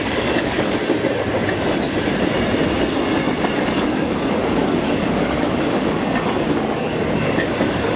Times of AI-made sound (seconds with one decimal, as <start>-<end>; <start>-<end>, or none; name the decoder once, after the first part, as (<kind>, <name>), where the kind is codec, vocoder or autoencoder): 0.0-0.8 (codec, DAC); 3.6-8.0